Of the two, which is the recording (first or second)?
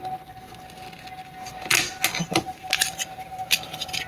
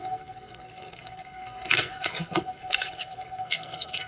first